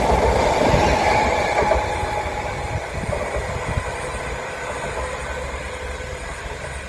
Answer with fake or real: real